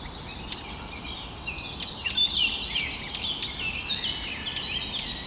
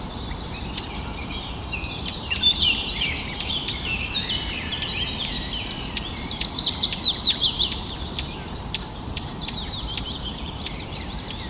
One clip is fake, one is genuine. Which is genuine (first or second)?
first